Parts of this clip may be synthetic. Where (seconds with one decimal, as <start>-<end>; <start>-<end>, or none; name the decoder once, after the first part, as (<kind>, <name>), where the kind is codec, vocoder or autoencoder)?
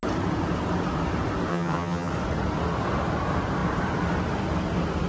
1.5-2.1 (vocoder, HiFi-GAN)